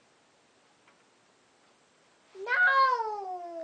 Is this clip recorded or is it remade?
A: recorded